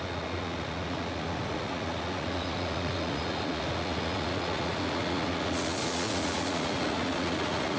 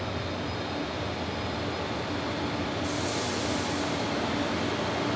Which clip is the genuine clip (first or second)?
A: second